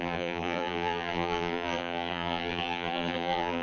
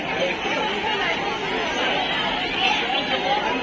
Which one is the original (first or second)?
second